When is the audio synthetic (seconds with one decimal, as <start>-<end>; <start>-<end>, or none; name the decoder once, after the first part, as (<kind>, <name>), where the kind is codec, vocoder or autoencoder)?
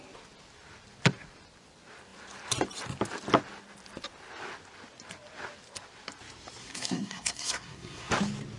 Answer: 6.6-8.1 (codec, SNAC)